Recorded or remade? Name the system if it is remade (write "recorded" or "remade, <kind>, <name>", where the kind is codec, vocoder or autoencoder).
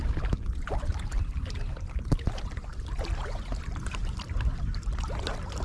remade, vocoder, BigVGAN v2